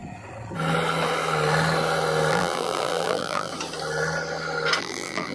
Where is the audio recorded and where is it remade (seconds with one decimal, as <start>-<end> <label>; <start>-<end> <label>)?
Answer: 0.0-2.3 recorded; 2.3-3.5 remade; 3.5-4.8 recorded; 4.8-5.3 remade